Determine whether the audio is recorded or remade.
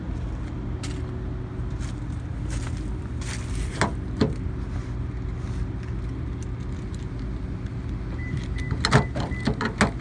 recorded